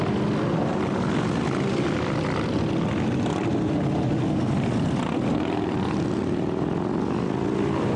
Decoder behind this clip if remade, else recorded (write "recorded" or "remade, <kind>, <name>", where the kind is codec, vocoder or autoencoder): recorded